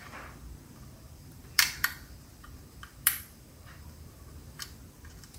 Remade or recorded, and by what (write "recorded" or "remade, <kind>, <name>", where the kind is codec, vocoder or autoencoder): remade, vocoder, BigVGAN v2